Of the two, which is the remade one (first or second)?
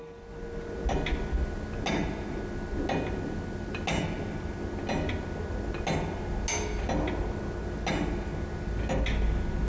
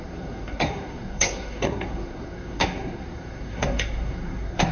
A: second